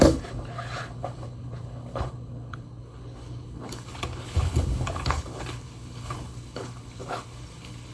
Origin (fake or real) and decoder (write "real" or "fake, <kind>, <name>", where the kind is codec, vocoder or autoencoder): fake, codec, HILCodec